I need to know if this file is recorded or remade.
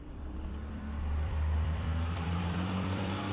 remade